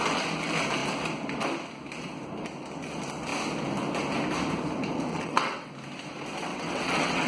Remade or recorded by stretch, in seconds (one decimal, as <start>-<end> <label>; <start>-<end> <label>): 0.0-5.1 recorded; 5.1-5.7 remade; 5.7-6.5 recorded; 6.5-7.3 remade